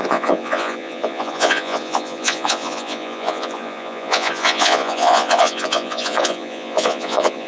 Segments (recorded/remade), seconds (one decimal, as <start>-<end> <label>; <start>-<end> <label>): 0.0-7.5 remade